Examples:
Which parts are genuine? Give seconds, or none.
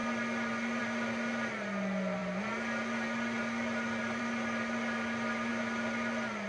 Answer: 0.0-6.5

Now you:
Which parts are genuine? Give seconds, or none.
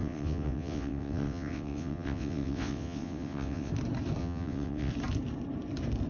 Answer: 3.7-4.2; 4.9-6.1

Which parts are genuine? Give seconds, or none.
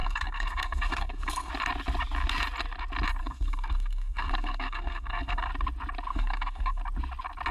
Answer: 1.5-3.2; 5.5-6.1; 6.8-7.5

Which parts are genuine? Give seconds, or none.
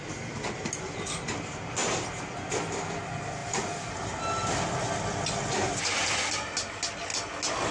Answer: 0.0-7.7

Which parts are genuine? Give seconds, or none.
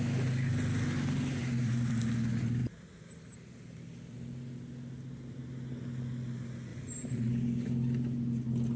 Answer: 0.0-1.4; 2.0-6.7; 7.3-8.8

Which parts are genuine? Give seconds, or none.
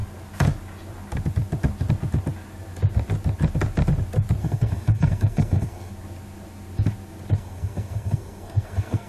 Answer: 0.0-4.4; 5.9-7.3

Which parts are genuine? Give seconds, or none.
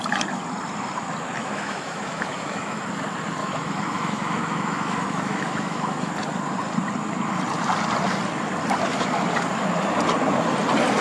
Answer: 0.0-1.4; 2.8-3.4; 6.1-11.0